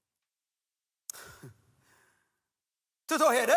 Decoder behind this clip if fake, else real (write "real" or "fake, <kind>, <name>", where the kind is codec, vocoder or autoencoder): real